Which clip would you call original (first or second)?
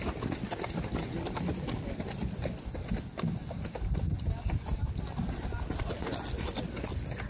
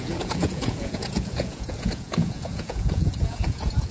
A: first